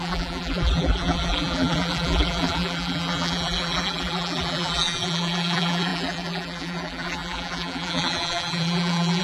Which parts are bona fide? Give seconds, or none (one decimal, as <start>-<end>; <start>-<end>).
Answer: none